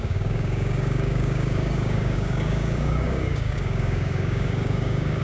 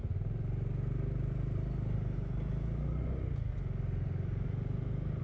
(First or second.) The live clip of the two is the second